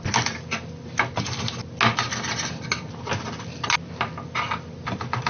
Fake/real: real